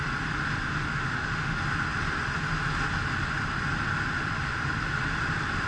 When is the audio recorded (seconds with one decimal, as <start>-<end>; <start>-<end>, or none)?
0.0-0.8; 1.6-5.7